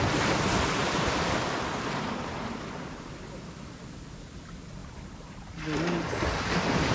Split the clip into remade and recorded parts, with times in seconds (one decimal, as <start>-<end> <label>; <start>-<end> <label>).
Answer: 0.0-0.8 recorded; 0.8-2.6 remade; 2.6-4.8 recorded; 4.8-5.5 remade; 5.5-6.9 recorded